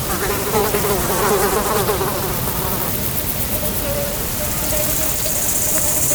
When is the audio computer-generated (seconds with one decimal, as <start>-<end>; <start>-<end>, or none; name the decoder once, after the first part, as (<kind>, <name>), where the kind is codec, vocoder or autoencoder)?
0.0-0.6 (vocoder, BigVGAN v2); 4.3-6.1